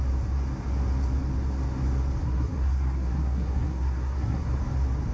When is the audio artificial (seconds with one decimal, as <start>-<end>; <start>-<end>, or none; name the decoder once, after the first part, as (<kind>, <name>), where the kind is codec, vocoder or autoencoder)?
2.2-4.6 (codec, SNAC)